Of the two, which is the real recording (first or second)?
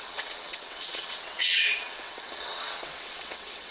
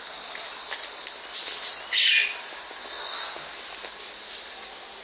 second